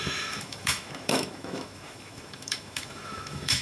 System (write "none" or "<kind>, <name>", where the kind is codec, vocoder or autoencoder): autoencoder, DAC-VAE